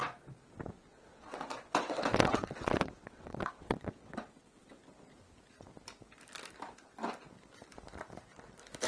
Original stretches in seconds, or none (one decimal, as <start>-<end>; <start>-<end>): 0.0-0.7; 4.8-8.9